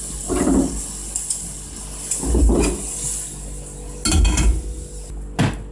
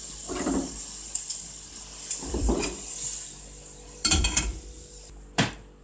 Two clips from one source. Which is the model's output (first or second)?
second